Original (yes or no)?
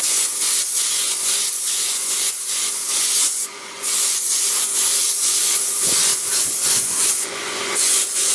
no